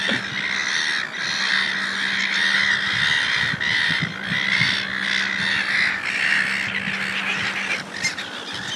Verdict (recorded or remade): recorded